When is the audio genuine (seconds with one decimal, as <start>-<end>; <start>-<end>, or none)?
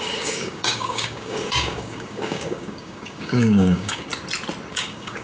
4.1-4.7